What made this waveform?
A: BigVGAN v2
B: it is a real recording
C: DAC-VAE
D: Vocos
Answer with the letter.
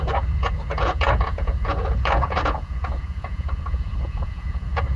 D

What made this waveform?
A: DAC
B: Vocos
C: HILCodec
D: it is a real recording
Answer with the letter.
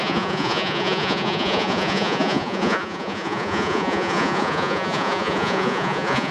B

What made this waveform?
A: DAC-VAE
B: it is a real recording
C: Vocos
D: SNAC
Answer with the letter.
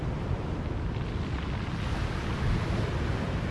B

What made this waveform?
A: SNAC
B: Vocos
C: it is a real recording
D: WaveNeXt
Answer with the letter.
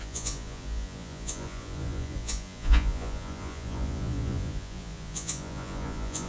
B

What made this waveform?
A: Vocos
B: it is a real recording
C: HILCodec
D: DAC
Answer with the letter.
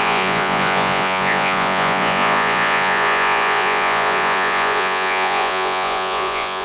A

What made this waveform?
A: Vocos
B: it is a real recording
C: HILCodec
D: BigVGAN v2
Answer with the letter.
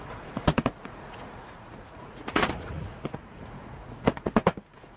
A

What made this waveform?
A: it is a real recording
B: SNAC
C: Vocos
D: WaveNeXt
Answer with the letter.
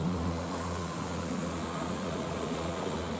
C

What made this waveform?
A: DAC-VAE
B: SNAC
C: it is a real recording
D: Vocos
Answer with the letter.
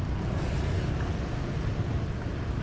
C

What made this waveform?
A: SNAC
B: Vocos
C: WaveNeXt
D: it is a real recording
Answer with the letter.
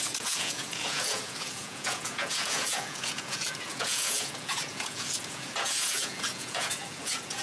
B